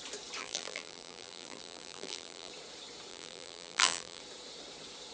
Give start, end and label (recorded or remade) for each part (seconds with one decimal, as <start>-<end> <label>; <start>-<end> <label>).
0.0-0.4 recorded; 0.4-2.5 remade; 2.5-3.1 recorded; 3.1-4.2 remade; 4.2-5.1 recorded